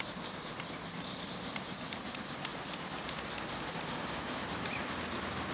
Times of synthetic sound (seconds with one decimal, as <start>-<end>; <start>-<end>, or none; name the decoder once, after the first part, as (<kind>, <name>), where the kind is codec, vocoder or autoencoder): none